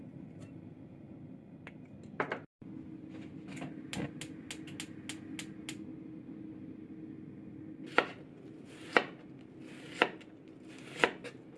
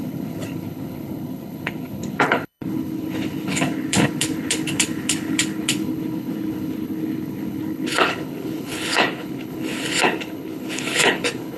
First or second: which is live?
first